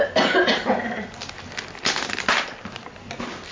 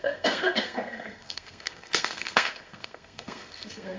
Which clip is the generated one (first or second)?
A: second